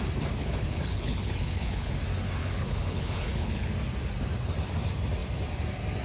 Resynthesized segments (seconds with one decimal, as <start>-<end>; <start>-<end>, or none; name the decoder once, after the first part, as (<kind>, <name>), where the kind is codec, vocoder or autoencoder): 0.4-1.9 (codec, HILCodec); 2.4-3.7